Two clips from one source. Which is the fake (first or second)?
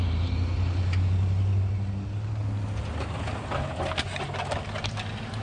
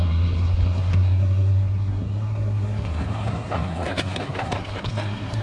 second